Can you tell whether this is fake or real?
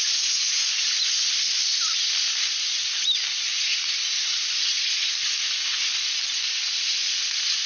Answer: real